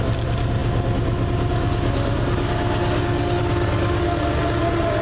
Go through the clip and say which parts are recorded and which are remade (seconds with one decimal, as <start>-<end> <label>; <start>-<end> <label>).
0.0-5.0 recorded